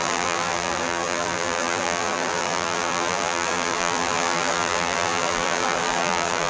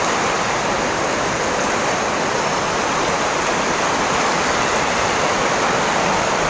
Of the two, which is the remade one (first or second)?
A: first